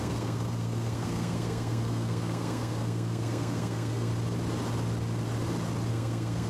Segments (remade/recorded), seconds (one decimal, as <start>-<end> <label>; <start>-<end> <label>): 0.0-4.1 remade; 4.1-5.9 recorded; 5.9-6.5 remade